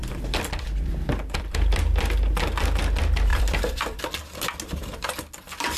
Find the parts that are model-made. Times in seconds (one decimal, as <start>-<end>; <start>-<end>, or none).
0.0-1.8; 3.3-4.0